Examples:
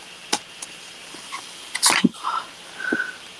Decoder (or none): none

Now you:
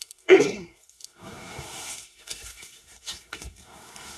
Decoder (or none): codec, SNAC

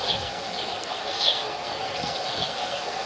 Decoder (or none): codec, SNAC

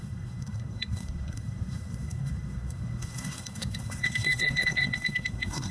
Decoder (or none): codec, SNAC